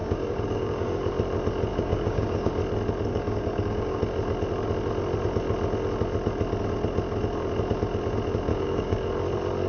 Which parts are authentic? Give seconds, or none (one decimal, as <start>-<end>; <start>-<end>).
1.1-1.7; 2.5-3.1; 4.0-8.5; 9.1-9.7